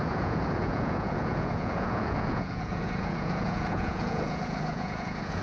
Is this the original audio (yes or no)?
no